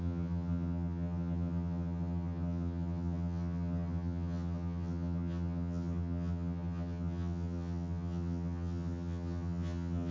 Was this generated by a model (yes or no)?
yes